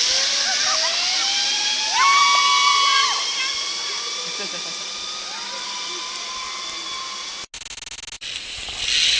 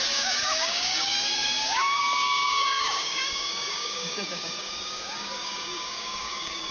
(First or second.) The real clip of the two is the first